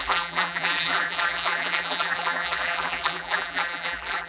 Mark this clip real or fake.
fake